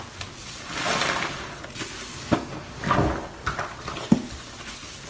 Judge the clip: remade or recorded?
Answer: recorded